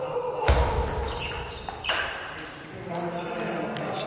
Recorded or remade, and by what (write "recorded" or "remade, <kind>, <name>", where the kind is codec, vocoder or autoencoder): recorded